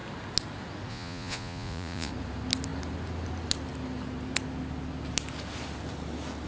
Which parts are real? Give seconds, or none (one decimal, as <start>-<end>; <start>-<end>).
0.0-0.9; 2.1-6.5